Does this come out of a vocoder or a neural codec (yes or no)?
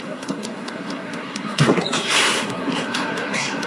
yes